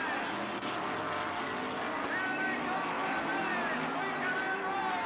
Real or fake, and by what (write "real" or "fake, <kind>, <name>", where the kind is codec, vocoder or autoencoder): real